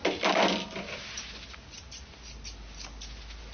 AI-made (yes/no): no